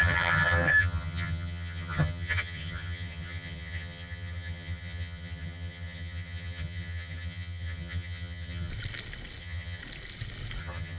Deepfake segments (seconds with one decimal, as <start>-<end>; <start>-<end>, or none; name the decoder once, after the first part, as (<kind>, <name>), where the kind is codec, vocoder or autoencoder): 0.0-8.7 (vocoder, HiFi-GAN); 9.4-9.8; 10.6-11.0